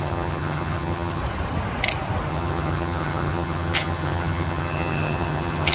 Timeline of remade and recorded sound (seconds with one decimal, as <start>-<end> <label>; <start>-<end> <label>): 0.0-1.2 remade; 1.2-2.3 recorded; 2.3-5.7 remade